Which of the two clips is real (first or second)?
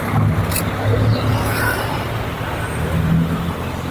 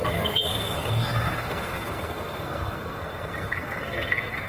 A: first